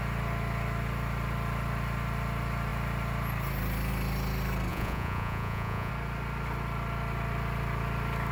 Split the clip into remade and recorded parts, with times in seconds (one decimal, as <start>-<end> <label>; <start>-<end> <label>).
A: 0.0-4.7 recorded; 4.7-5.9 remade; 5.9-8.3 recorded